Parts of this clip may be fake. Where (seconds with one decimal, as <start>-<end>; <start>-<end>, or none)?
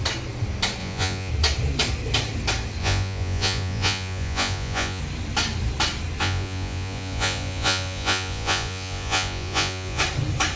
0.8-1.3; 2.8-5.0; 6.2-10.0